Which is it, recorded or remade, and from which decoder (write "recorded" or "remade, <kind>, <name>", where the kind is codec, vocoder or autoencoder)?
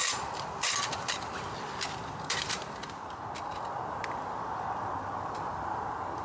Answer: recorded